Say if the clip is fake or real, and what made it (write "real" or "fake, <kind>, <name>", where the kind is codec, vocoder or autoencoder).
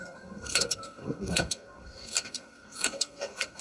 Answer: fake, codec, SNAC